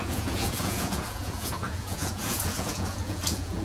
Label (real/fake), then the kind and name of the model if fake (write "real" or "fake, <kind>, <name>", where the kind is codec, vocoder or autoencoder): fake, vocoder, Vocos